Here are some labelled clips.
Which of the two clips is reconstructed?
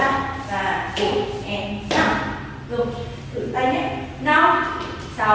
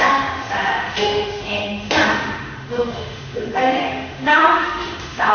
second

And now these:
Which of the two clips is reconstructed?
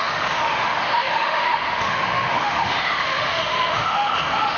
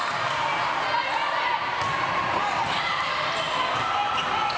first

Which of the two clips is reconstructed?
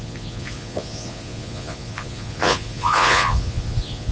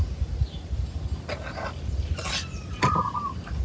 first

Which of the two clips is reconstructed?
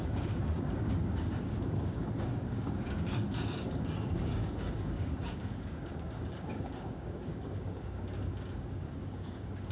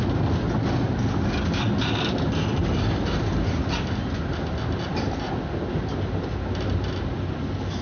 first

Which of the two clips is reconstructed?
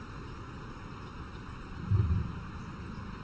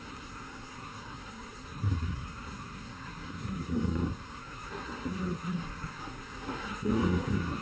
second